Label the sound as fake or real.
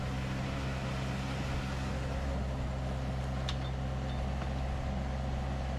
real